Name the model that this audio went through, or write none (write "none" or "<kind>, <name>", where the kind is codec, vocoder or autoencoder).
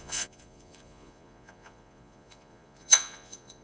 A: vocoder, Vocos